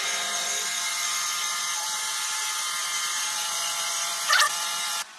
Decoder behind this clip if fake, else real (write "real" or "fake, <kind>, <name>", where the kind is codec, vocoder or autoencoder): fake, vocoder, Vocos